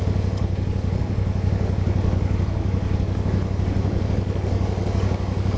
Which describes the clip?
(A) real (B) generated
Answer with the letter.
B